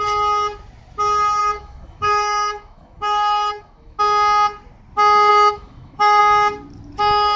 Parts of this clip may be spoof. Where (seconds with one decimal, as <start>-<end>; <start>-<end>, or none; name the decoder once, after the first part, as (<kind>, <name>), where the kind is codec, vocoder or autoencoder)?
1.4-4.0 (autoencoder, DAC-VAE); 5.3-6.2